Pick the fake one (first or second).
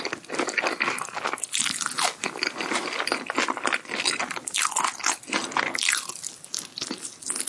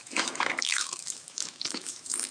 second